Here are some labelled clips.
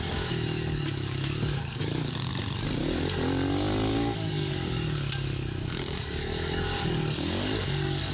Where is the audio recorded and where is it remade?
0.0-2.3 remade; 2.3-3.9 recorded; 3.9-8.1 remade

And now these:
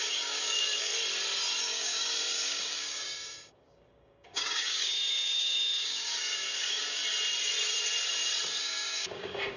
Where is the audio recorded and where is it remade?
0.0-0.9 remade; 0.9-1.6 recorded; 1.6-7.0 remade; 7.0-8.6 recorded; 8.6-9.6 remade

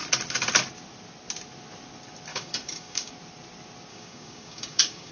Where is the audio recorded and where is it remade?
0.0-2.3 recorded; 2.3-3.1 remade; 3.1-3.9 recorded; 3.9-5.1 remade